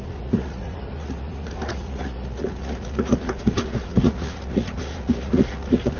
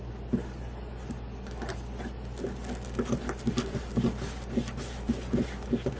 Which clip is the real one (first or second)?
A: second